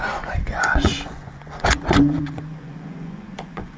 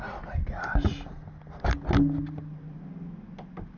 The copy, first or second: first